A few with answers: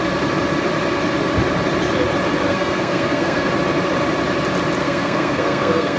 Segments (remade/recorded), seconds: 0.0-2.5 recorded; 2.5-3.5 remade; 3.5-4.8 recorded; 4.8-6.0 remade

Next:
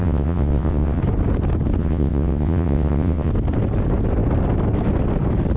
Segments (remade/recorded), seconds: 0.0-1.0 remade; 1.0-1.8 recorded; 1.8-3.3 remade; 3.3-5.6 recorded

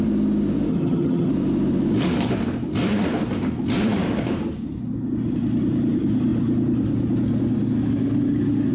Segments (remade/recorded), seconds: 0.0-0.7 recorded; 0.7-1.3 remade; 1.3-8.7 recorded

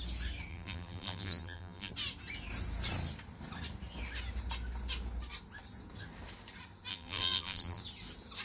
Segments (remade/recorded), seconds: 0.0-0.5 recorded; 0.5-1.9 remade; 1.9-6.9 recorded; 6.9-7.8 remade; 7.8-8.4 recorded

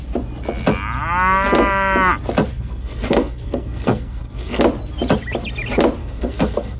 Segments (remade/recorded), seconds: 0.0-2.5 recorded; 2.5-4.6 remade; 4.6-6.0 recorded; 6.0-6.8 remade

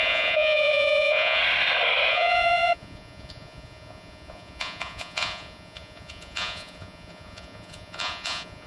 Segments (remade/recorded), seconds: 0.0-1.4 remade; 1.4-2.1 recorded; 2.1-8.7 remade

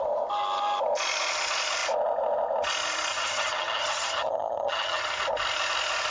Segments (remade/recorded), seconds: 0.0-3.1 recorded; 3.1-5.0 remade; 5.0-6.1 recorded